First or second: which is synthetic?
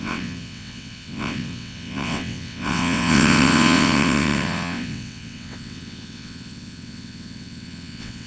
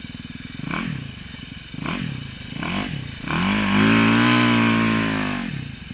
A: first